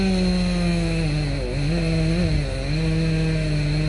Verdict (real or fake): real